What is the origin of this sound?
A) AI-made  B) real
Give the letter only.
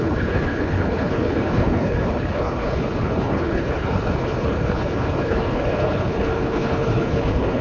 A